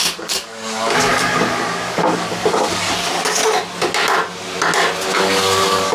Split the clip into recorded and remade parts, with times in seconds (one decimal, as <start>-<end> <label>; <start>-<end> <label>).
0.0-3.4 remade; 3.4-5.1 recorded; 5.1-5.9 remade